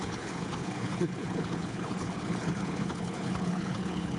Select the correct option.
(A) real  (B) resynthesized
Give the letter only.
B